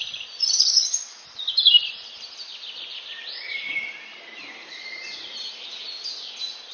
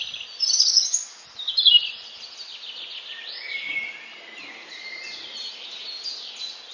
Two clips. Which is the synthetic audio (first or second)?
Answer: first